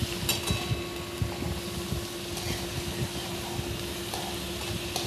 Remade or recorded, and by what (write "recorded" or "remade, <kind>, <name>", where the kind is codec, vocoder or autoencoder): recorded